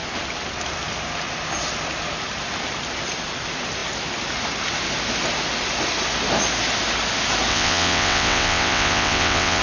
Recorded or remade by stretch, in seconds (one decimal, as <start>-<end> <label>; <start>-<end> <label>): 0.0-7.5 recorded; 7.5-9.6 remade